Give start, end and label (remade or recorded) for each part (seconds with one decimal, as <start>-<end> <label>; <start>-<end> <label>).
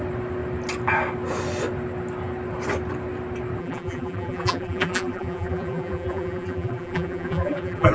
0.0-3.6 recorded; 3.6-7.9 remade